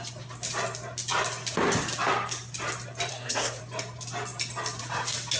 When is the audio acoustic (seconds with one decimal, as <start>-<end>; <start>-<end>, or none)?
0.0-3.1; 3.6-5.4